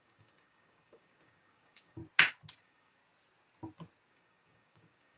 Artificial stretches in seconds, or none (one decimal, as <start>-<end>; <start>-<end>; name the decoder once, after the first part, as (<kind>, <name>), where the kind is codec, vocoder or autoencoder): 0.0-2.0 (codec, DAC); 2.6-3.0; 4.1-5.2